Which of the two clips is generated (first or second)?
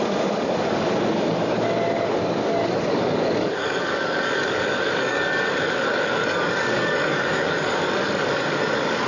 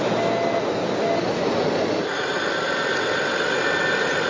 first